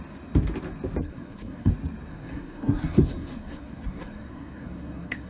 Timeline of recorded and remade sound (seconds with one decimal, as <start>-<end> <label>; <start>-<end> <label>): 0.0-1.0 recorded; 1.0-1.7 remade; 1.7-2.1 recorded; 2.1-5.3 remade